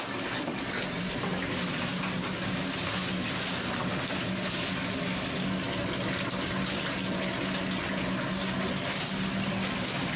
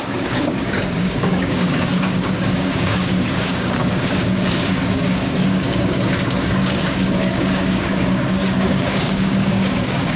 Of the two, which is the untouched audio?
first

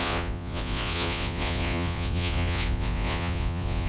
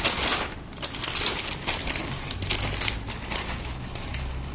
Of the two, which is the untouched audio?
second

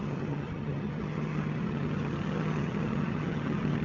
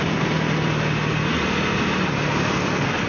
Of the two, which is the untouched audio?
second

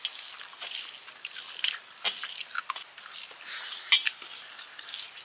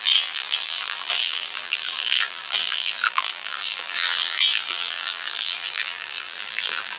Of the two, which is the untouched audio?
first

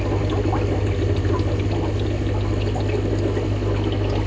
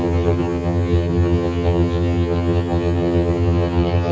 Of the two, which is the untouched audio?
first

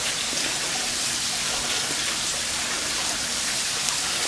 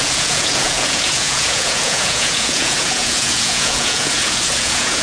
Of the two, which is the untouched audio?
first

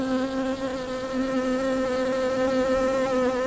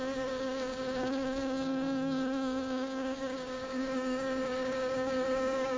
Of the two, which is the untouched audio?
first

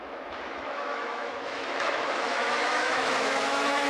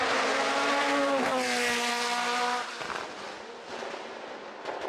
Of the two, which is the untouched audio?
second